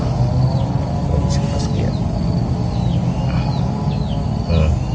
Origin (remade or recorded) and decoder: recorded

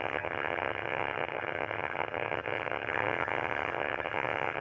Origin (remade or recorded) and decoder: remade, vocoder, HiFi-GAN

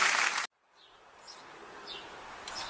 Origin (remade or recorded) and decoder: recorded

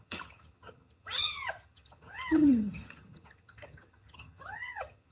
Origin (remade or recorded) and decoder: remade, vocoder, HiFi-GAN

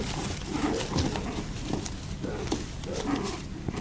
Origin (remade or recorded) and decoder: recorded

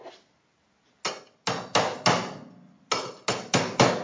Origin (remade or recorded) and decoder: recorded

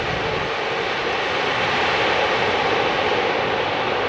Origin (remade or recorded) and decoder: recorded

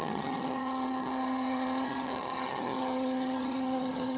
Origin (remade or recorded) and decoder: remade, vocoder, HiFi-GAN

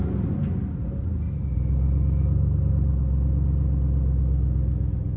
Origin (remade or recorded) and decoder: recorded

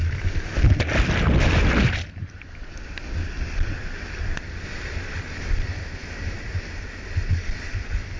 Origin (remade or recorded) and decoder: recorded